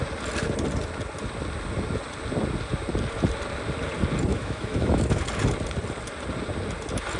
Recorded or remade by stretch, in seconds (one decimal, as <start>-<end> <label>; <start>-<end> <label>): 0.0-4.3 recorded; 4.3-5.2 remade; 5.2-7.2 recorded